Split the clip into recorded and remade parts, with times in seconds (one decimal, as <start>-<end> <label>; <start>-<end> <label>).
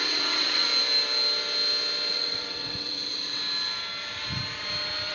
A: 0.0-0.7 remade; 0.7-2.1 recorded; 2.1-3.4 remade; 3.4-5.1 recorded